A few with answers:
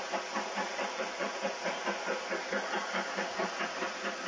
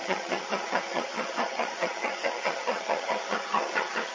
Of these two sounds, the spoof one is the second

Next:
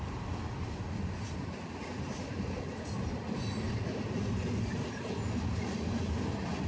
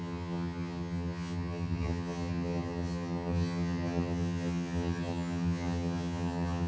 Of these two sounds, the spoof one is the second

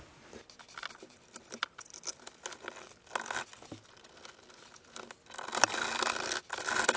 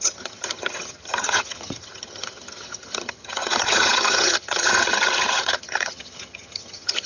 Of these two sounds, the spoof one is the second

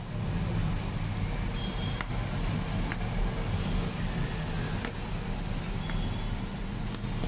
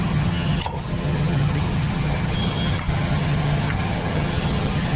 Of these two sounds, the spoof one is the second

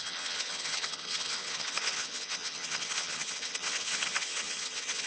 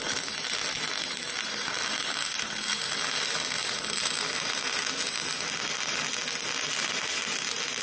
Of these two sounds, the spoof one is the first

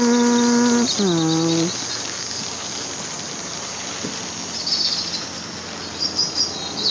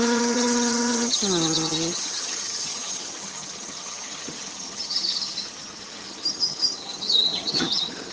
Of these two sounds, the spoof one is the second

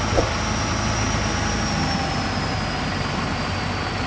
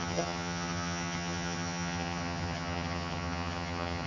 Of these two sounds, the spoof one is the second